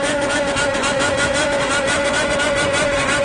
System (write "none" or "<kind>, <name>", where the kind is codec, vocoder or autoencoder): vocoder, Vocos